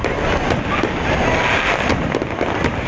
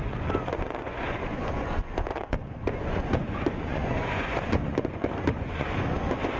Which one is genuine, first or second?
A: first